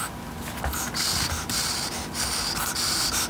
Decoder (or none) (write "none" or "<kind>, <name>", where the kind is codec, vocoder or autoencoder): none